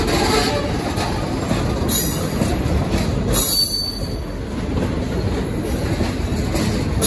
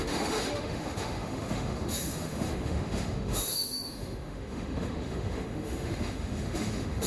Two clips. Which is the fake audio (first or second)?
second